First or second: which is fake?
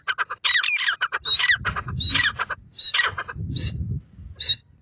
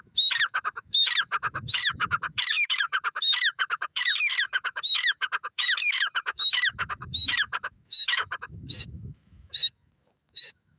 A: second